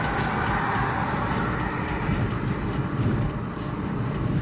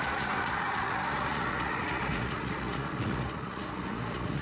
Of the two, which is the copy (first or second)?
second